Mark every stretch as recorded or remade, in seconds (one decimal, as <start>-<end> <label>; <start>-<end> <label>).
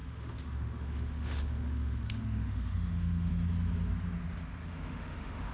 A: 0.0-3.3 remade; 3.3-4.6 recorded; 4.6-5.5 remade